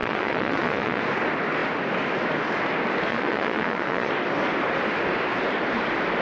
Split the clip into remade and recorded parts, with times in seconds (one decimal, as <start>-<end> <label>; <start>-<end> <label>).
0.0-1.0 remade; 1.0-3.1 recorded; 3.1-4.1 remade; 4.1-6.2 recorded